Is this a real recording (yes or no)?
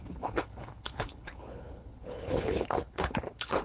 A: no